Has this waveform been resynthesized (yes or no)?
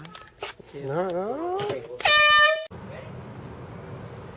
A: no